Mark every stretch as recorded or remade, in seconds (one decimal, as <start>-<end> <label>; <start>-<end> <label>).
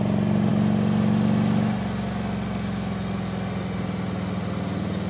0.0-5.1 recorded